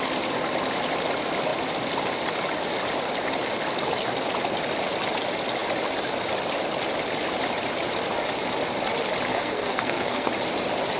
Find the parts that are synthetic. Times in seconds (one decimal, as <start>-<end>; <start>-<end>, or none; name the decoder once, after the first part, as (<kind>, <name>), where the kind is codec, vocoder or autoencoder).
9.3-10.3 (codec, SNAC)